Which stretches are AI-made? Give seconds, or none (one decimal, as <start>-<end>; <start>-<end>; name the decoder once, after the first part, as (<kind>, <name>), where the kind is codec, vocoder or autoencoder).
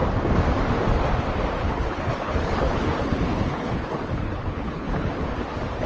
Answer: 1.6-5.1 (codec, HILCodec)